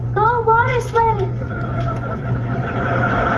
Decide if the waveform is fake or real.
fake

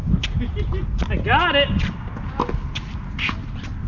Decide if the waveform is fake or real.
real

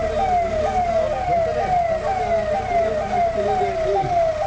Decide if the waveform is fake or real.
real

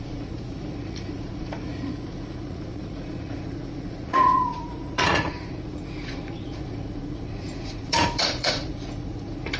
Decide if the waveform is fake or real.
fake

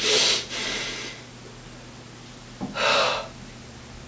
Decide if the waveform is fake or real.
real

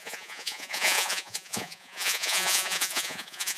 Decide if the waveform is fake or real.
fake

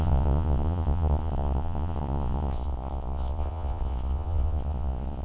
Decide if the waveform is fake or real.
fake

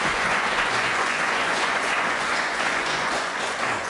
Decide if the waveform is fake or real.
fake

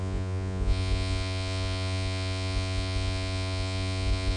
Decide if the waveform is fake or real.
fake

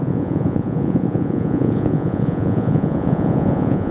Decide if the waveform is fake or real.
fake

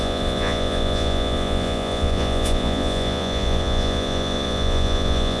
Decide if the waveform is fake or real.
fake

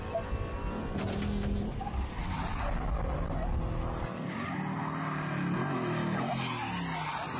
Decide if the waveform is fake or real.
real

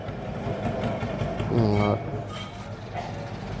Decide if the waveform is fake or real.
real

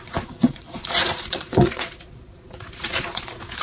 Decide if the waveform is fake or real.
fake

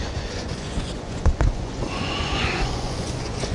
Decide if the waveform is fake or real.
fake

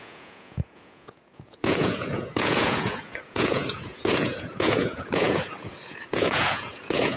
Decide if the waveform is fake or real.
fake